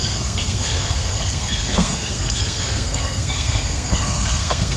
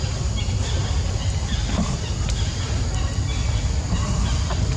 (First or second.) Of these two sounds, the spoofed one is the first